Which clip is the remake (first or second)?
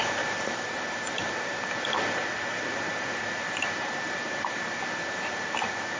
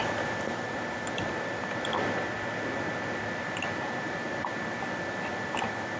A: first